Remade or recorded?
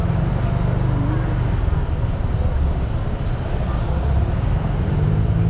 recorded